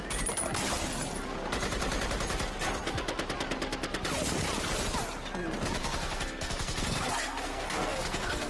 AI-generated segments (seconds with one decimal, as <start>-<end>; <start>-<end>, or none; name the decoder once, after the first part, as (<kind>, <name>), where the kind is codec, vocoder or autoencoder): 5.8-8.5 (codec, SNAC)